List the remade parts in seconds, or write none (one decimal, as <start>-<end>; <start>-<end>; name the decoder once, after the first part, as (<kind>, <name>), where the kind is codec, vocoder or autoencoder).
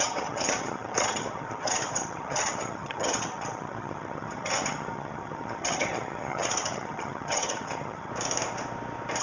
0.0-8.1 (vocoder, HiFi-GAN)